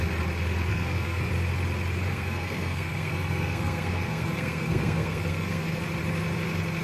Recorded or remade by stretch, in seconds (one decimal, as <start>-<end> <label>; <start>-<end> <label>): 0.0-0.7 recorded; 0.7-1.3 remade; 1.3-2.1 recorded; 2.1-5.8 remade; 5.8-6.8 recorded